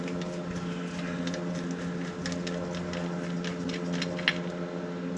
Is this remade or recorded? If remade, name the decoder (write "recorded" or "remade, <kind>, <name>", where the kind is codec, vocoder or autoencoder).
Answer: recorded